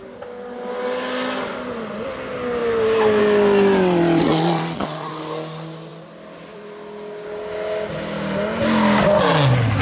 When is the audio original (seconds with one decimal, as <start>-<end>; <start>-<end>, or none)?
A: 0.0-4.3; 5.1-9.8